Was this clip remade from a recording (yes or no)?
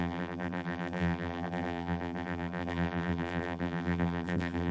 yes